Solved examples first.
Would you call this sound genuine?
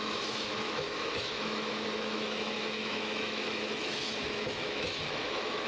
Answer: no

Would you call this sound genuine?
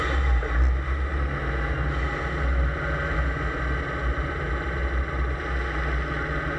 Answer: yes